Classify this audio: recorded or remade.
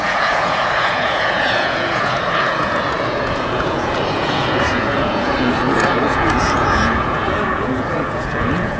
remade